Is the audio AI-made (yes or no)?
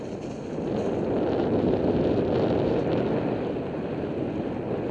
no